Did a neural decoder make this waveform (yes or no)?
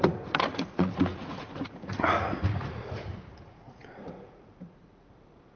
yes